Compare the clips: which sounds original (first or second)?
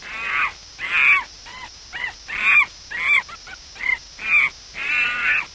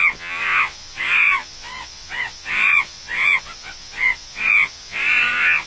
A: first